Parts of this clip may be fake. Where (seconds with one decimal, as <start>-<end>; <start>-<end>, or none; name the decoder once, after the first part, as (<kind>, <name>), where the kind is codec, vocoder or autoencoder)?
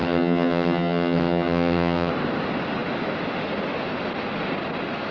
0.0-2.1 (vocoder, HiFi-GAN)